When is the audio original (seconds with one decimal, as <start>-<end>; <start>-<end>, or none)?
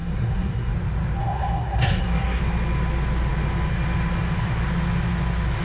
0.7-1.2; 2.4-5.6